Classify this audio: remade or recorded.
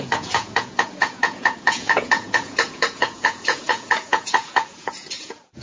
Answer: remade